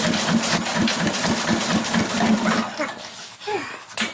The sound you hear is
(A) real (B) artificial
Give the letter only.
A